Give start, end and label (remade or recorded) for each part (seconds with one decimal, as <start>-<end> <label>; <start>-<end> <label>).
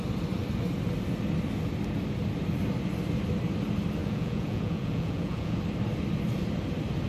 0.0-4.0 recorded; 4.0-5.6 remade; 5.6-7.1 recorded